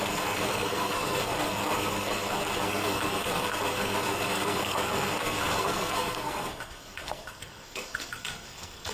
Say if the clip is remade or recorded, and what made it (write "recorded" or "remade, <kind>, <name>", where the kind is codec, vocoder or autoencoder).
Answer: remade, codec, SNAC